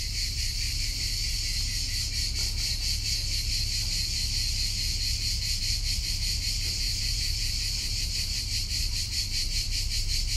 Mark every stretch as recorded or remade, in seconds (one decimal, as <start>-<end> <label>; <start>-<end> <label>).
0.0-1.2 remade; 1.2-5.6 recorded; 5.6-10.4 remade